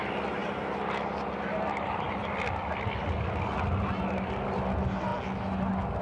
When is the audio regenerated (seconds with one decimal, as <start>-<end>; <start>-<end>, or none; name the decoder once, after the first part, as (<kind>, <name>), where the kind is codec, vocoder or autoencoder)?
none